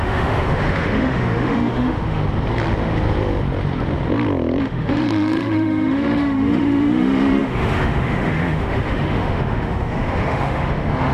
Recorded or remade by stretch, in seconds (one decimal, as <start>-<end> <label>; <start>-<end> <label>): 0.0-2.2 remade; 2.2-4.6 recorded; 4.6-11.1 remade

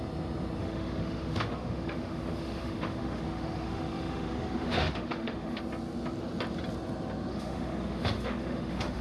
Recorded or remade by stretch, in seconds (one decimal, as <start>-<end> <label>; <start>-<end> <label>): 0.0-0.6 recorded; 0.6-5.6 remade; 5.6-7.3 recorded; 7.3-9.0 remade

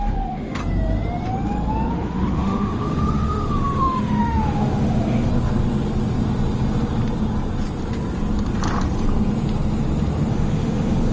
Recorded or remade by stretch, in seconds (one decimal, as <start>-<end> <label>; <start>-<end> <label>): 0.0-0.6 remade; 0.6-1.9 recorded; 1.9-5.3 remade; 5.3-10.3 recorded; 10.3-11.1 remade

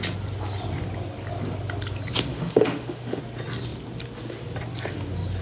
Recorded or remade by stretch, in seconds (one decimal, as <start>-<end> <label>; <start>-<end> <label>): 0.0-2.3 recorded; 2.3-3.2 remade; 3.2-5.4 recorded

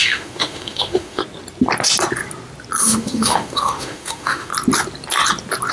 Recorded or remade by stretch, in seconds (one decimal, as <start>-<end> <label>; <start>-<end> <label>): 0.0-1.2 remade; 1.2-2.8 recorded; 2.8-4.5 remade; 4.5-5.7 recorded